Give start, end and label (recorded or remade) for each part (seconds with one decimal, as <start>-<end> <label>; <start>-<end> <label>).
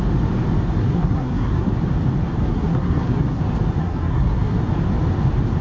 0.0-0.8 recorded; 0.8-1.7 remade; 1.7-2.4 recorded; 2.4-3.4 remade; 3.4-3.8 recorded; 3.8-4.6 remade; 4.6-5.6 recorded